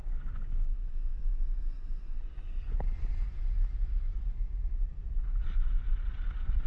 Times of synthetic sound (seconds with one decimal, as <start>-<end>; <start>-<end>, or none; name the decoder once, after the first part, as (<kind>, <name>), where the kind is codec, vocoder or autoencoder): none